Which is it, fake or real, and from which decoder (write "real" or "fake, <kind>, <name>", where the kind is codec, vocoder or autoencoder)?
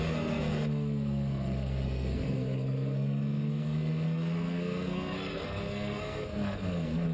fake, codec, SNAC